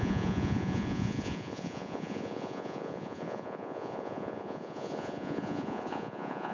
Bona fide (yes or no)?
no